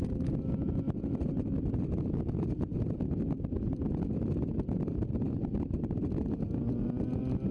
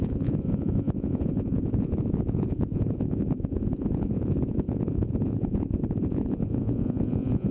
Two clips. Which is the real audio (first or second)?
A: first